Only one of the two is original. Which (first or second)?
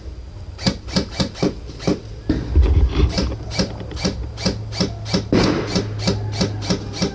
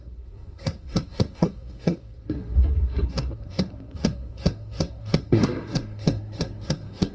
first